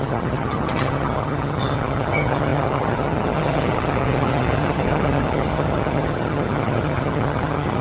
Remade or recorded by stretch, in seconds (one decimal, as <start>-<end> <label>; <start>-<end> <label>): 0.0-7.8 remade

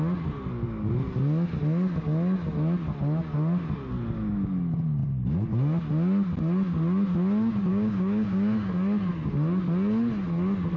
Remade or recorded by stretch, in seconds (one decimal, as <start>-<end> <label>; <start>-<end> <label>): 0.0-7.7 recorded; 7.7-8.7 remade; 8.7-10.8 recorded

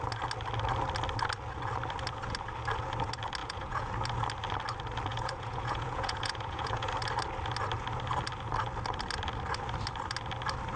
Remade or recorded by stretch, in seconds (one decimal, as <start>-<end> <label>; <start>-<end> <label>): 0.0-3.4 recorded; 3.4-3.9 remade; 3.9-5.1 recorded; 5.1-6.9 remade; 6.9-10.8 recorded

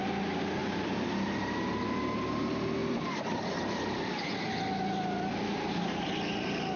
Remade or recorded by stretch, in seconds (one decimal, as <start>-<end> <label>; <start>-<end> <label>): 0.0-0.6 recorded; 0.6-1.1 remade; 1.1-6.8 recorded

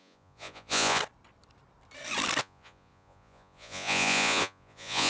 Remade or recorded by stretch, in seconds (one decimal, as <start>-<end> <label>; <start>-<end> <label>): 0.0-1.0 remade; 1.0-2.4 recorded; 2.4-5.1 remade

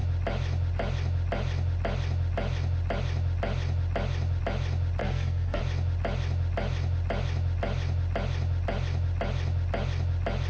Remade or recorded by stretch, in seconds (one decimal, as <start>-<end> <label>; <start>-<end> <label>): 0.0-5.0 recorded; 5.0-5.6 remade; 5.6-10.5 recorded

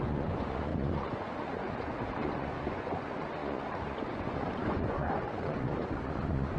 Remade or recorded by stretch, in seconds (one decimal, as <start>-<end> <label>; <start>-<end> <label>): 0.0-6.6 remade